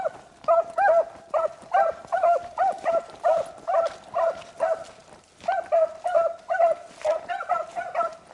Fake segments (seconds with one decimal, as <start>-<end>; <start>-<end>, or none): none